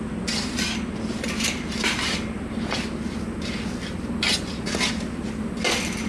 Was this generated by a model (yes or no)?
no